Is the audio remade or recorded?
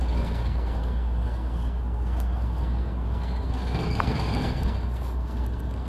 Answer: remade